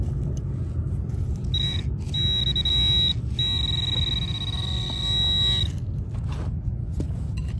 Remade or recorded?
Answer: recorded